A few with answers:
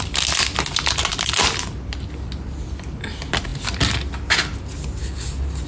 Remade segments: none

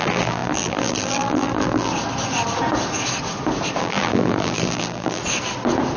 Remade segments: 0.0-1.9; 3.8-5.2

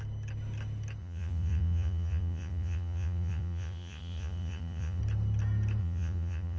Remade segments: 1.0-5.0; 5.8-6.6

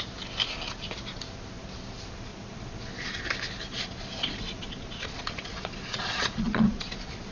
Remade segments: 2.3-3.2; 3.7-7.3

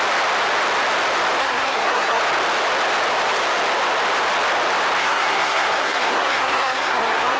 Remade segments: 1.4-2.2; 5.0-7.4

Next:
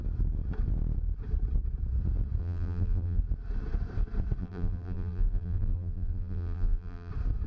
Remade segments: 2.4-3.2; 4.4-7.1

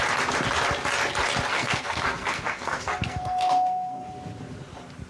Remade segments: 1.5-4.1